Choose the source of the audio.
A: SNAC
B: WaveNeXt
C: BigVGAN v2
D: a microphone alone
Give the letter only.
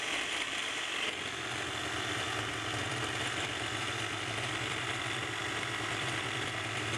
C